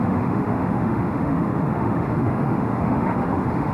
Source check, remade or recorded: remade